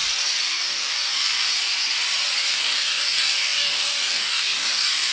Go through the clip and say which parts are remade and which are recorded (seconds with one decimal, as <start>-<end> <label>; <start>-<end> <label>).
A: 0.0-0.5 recorded; 0.5-1.5 remade; 1.5-2.5 recorded; 2.5-5.1 remade